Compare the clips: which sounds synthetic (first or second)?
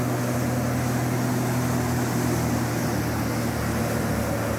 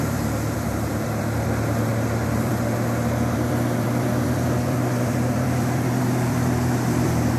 second